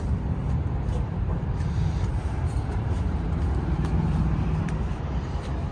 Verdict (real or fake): fake